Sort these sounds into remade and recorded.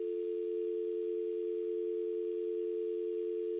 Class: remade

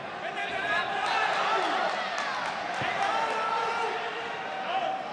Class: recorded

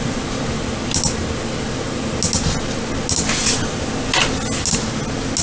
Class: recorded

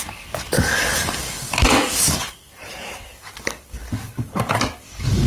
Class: remade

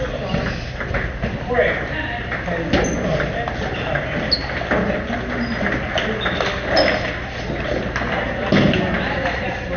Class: recorded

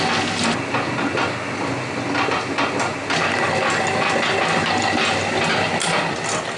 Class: recorded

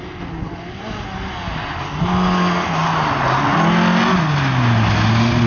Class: recorded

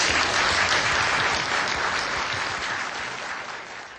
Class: recorded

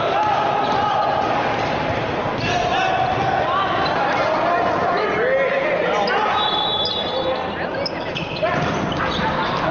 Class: recorded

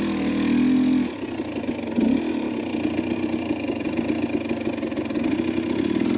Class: recorded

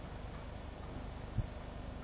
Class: recorded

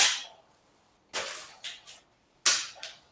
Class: recorded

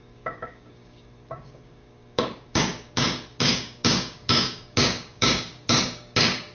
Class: remade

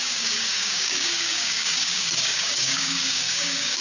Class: remade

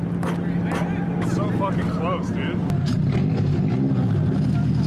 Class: recorded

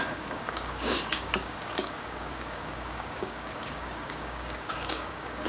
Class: remade